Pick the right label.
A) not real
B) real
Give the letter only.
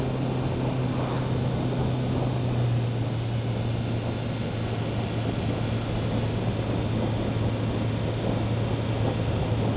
B